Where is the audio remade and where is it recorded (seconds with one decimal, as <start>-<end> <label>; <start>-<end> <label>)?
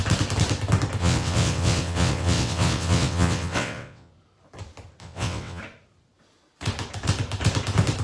0.0-1.0 recorded; 1.0-4.1 remade; 4.1-5.0 recorded; 5.0-5.6 remade; 5.6-8.0 recorded